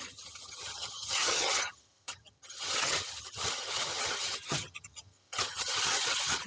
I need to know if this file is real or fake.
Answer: fake